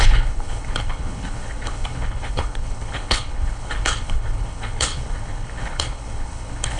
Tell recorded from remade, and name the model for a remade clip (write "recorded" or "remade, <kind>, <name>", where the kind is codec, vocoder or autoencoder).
remade, codec, HILCodec